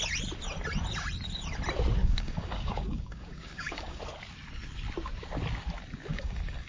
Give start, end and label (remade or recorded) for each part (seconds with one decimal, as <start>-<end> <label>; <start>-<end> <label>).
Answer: 0.0-2.0 recorded; 2.0-4.0 remade; 4.0-6.1 recorded; 6.1-6.7 remade